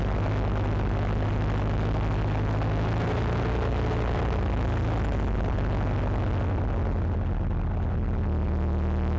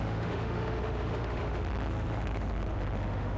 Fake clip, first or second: second